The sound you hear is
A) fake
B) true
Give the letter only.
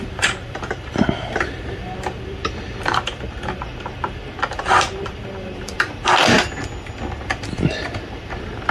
A